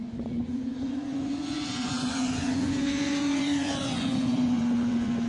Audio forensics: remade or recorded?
remade